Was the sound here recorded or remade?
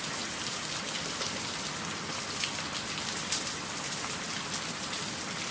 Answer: recorded